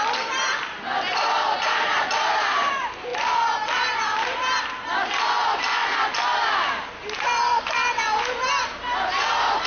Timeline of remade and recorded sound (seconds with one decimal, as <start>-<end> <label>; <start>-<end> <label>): 0.0-5.8 remade; 5.8-6.9 recorded; 6.9-7.5 remade; 7.5-8.5 recorded; 8.5-9.7 remade